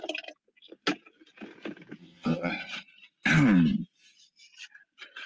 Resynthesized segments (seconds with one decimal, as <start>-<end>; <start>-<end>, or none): 2.0-2.5